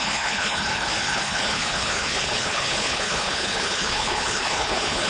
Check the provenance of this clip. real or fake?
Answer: fake